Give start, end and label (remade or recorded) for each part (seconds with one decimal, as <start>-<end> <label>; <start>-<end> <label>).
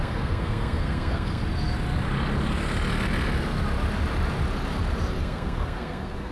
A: 0.0-1.4 remade; 1.4-5.2 recorded; 5.2-6.3 remade